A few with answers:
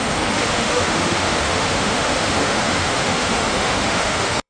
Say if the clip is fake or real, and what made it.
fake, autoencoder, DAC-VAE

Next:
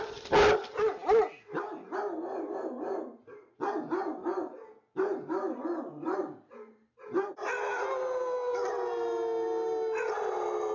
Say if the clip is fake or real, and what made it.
real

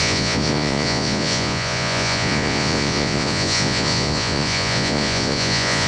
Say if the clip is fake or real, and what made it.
fake, vocoder, Vocos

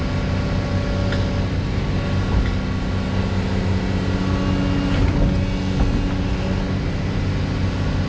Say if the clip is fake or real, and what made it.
real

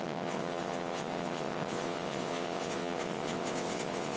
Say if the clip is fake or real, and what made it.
fake, vocoder, WaveNeXt